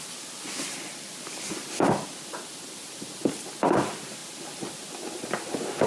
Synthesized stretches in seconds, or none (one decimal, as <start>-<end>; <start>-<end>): none